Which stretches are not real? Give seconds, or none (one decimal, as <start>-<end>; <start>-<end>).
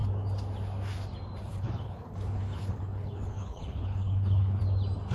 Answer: 1.5-4.6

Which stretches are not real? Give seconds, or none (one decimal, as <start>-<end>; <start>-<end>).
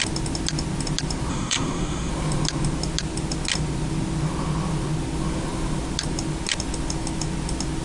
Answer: 1.3-2.1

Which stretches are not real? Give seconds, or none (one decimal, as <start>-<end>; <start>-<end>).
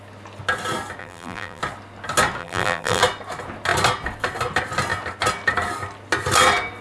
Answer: 1.0-1.6; 2.4-3.0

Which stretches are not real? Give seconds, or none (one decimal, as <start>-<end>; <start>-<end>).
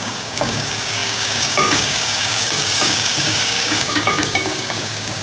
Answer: 0.0-5.2